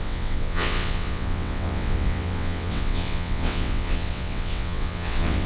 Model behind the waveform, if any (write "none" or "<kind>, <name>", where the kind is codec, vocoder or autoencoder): vocoder, WaveNeXt